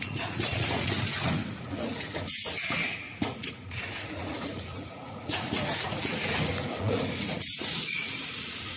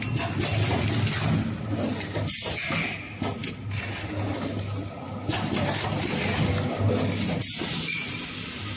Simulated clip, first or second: first